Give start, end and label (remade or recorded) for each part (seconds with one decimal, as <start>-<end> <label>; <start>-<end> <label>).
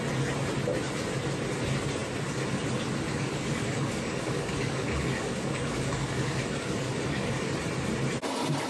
0.0-3.1 recorded; 3.1-7.5 remade; 7.5-8.7 recorded